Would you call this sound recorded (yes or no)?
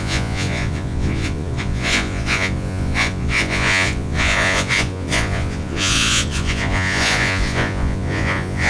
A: no